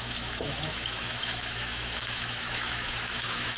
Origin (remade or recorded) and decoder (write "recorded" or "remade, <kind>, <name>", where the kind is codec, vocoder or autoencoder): remade, autoencoder, DAC-VAE